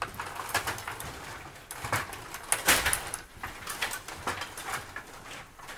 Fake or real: real